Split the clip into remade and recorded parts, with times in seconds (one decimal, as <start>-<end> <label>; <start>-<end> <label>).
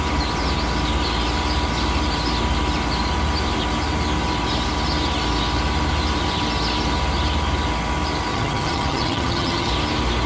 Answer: 0.0-8.3 recorded; 8.3-9.7 remade; 9.7-10.3 recorded